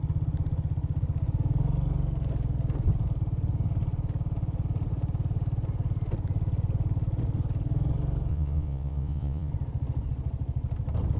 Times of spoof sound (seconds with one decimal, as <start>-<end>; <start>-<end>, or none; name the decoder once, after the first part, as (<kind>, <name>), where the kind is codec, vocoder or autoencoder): 8.3-9.5 (vocoder, Vocos)